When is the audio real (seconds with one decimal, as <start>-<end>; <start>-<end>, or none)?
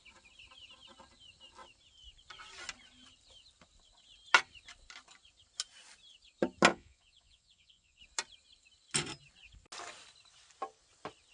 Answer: 0.0-6.7; 8.0-11.3